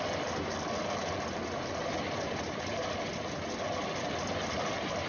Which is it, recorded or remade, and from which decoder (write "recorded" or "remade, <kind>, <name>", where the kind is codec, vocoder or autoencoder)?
recorded